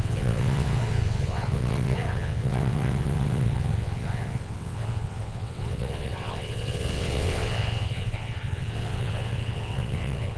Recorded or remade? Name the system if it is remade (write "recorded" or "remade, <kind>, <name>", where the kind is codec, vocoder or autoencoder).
remade, vocoder, WaveNeXt